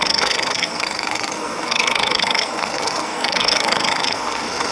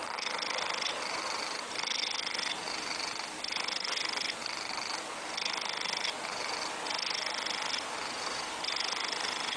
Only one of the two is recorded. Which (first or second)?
second